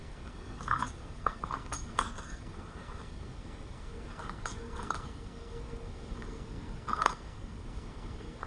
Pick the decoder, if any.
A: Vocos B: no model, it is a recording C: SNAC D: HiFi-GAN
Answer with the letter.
C